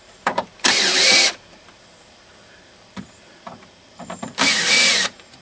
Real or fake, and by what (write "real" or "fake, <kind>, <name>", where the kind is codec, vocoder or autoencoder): fake, vocoder, BigVGAN v2